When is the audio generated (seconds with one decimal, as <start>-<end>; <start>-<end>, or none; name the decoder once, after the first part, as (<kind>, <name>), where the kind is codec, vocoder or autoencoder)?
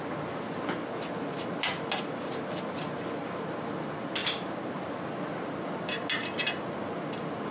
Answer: none